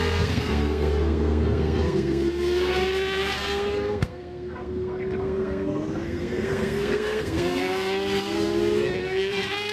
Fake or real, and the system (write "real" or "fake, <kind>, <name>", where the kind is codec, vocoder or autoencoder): fake, codec, SNAC